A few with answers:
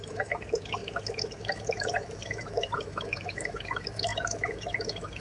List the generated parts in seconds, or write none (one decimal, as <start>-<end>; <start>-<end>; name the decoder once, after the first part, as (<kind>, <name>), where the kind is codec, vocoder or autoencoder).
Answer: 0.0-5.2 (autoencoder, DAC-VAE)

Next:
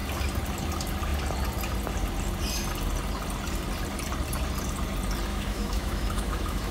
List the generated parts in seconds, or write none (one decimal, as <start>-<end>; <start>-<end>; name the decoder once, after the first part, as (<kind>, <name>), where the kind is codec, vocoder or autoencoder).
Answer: 5.3-6.7 (autoencoder, DAC-VAE)

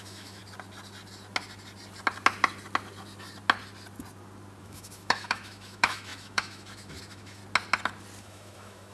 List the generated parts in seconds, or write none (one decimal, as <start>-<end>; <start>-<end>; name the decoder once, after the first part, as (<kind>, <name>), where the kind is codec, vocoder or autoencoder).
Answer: 0.0-0.4 (autoencoder, DAC-VAE); 4.6-7.4; 8.2-8.9

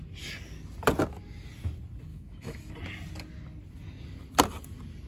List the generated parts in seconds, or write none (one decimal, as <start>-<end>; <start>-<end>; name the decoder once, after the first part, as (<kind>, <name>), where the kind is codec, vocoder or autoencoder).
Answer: 2.1-2.7 (autoencoder, DAC-VAE)

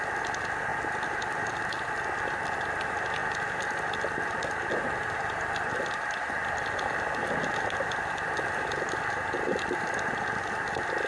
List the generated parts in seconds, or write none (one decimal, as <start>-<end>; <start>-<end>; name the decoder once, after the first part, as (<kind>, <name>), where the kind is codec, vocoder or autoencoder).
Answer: none

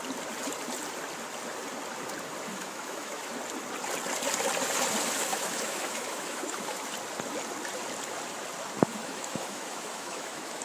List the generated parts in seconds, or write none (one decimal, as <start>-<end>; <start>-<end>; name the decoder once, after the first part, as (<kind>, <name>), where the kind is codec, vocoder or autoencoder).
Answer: 2.5-3.3 (autoencoder, DAC-VAE); 5.3-6.9; 9.0-10.6

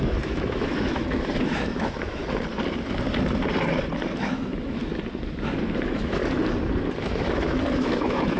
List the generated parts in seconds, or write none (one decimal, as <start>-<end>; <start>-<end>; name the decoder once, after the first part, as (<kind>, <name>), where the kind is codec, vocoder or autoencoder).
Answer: 0.0-2.2 (autoencoder, DAC-VAE); 4.1-4.8; 5.6-6.2; 7.0-8.4